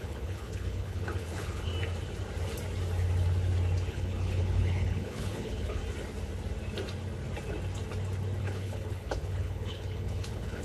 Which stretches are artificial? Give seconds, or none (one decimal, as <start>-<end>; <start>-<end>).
0.0-1.7; 3.9-5.8; 8.4-10.6